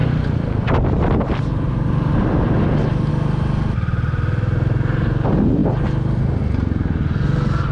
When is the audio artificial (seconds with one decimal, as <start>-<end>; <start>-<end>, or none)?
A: 0.0-3.1